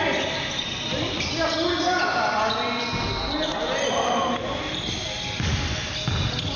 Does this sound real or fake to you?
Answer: real